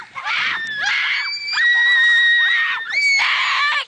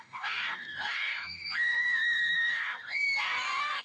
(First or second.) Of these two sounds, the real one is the first